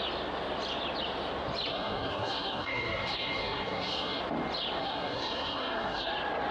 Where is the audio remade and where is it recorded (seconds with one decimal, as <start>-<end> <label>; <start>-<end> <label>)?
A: 0.0-1.7 recorded; 1.7-4.2 remade; 4.2-4.8 recorded; 4.8-6.1 remade; 6.1-6.5 recorded